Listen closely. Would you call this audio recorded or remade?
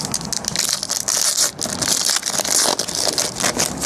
recorded